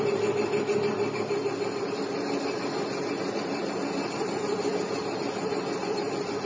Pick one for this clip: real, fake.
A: real